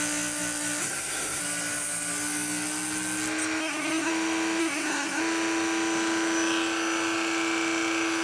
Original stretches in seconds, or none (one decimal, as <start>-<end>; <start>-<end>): 0.0-0.8; 1.4-3.6; 4.1-4.6; 5.2-8.2